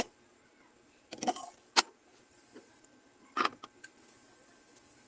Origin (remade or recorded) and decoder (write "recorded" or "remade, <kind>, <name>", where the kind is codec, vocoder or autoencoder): recorded